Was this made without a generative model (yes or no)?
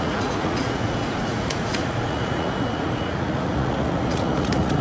no